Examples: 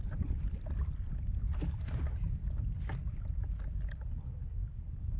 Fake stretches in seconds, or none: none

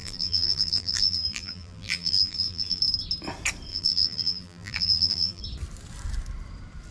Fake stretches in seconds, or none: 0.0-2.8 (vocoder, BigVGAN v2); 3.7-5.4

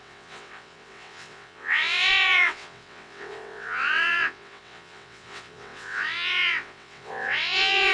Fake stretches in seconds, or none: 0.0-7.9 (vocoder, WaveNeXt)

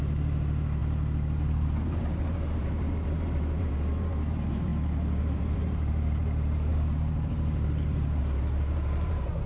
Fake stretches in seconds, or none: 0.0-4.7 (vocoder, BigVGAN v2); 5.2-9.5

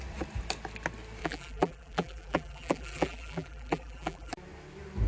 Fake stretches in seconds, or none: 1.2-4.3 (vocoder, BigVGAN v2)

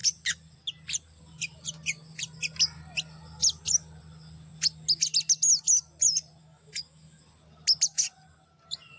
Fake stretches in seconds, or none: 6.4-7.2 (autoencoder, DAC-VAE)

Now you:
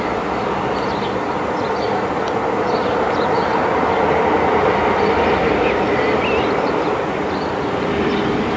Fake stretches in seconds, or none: none

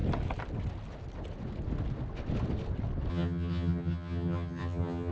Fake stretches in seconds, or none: 3.1-5.1 (vocoder, HiFi-GAN)